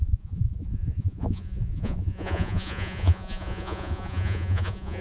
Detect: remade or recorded remade